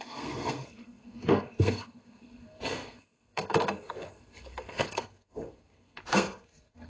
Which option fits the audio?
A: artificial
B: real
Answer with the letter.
A